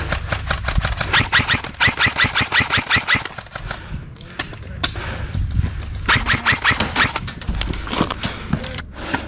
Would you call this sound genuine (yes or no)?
yes